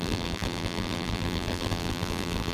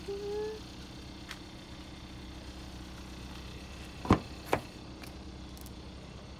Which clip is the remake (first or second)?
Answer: first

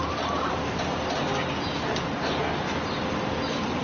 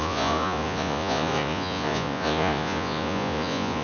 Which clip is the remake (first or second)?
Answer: second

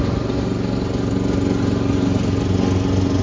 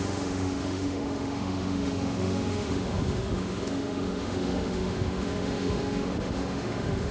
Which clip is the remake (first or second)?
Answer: second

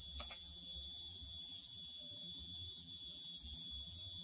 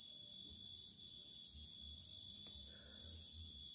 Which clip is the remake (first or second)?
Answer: first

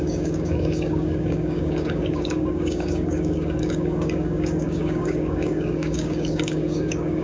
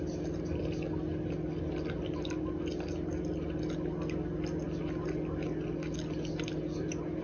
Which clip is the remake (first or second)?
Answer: first